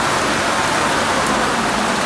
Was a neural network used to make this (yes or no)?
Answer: no